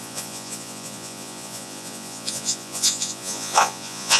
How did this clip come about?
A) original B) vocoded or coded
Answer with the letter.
B